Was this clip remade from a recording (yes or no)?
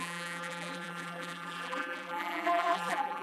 yes